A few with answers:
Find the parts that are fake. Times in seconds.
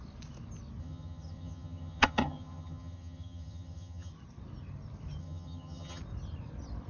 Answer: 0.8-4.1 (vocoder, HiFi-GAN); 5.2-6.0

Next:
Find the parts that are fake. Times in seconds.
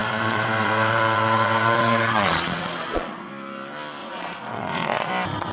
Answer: 0.0-3.3 (vocoder, Vocos); 4.0-5.1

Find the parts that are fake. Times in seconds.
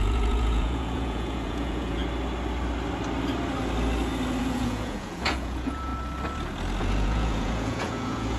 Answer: 0.0-2.0 (vocoder, Vocos); 4.4-5.9; 6.8-8.4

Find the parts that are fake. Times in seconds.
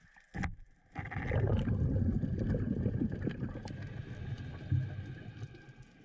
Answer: none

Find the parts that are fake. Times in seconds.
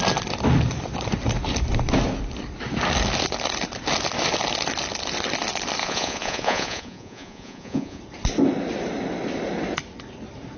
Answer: 5.8-8.0 (vocoder, Vocos)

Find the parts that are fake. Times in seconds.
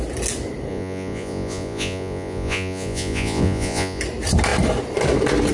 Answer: 0.7-4.0 (vocoder, Vocos)